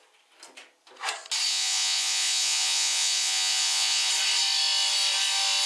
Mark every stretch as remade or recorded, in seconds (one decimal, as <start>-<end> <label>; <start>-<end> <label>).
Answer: 0.0-1.5 recorded; 1.5-4.1 remade; 4.1-5.7 recorded